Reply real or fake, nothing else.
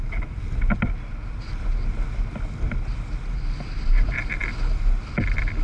real